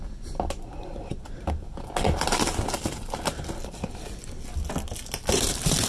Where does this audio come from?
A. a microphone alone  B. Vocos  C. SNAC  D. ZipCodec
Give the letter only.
A